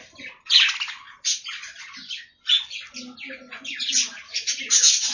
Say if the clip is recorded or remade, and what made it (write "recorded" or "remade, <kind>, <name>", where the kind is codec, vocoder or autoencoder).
recorded